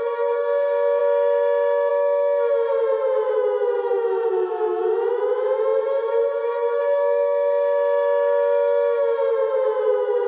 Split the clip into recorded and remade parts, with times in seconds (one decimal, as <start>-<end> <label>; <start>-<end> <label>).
0.0-10.3 remade